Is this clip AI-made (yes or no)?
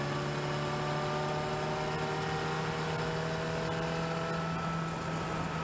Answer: no